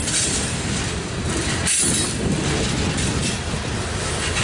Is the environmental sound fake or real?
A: real